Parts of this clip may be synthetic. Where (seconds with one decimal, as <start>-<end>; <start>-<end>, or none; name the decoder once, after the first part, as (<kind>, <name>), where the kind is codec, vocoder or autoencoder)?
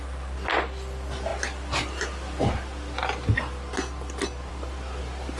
none